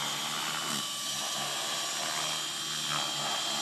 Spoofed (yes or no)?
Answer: no